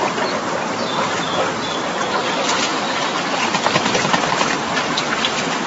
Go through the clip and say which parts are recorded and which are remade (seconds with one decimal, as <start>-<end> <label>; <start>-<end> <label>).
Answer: 0.0-5.7 recorded